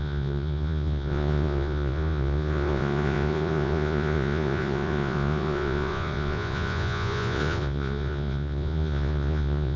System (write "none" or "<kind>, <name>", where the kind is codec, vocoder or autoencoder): vocoder, Vocos